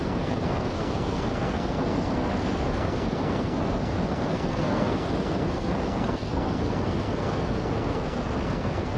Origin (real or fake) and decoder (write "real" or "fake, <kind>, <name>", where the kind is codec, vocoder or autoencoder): fake, codec, SNAC